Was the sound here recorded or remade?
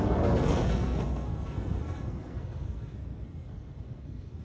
remade